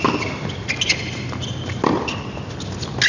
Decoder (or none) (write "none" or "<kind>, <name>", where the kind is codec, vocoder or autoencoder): none